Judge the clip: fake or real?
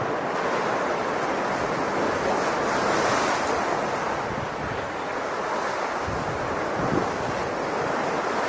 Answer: real